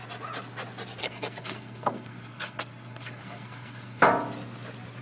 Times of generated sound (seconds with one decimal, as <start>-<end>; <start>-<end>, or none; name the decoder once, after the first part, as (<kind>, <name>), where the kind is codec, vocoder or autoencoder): 1.0-4.0 (codec, SNAC)